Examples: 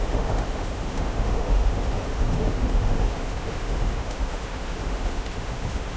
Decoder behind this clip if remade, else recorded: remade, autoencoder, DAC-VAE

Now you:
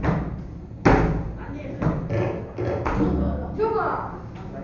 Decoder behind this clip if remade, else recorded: recorded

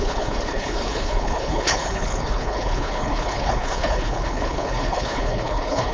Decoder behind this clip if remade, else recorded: remade, codec, HILCodec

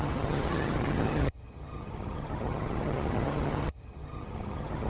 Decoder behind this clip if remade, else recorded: remade, vocoder, HiFi-GAN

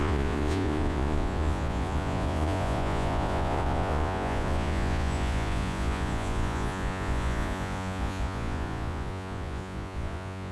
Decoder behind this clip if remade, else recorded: remade, vocoder, Vocos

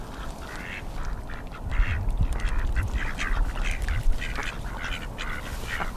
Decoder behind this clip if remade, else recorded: recorded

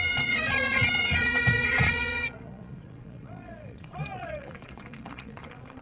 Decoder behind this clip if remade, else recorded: remade, vocoder, Vocos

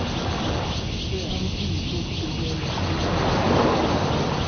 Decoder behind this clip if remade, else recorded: recorded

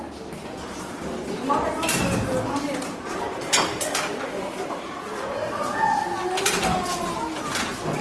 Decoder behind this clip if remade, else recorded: recorded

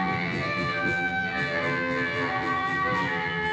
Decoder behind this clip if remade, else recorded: remade, vocoder, BigVGAN v2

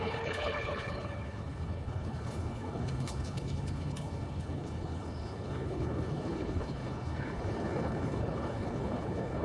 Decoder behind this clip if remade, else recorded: remade, codec, HILCodec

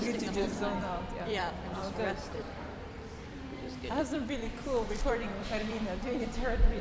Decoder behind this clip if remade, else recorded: remade, vocoder, BigVGAN v2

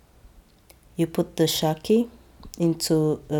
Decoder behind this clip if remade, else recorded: recorded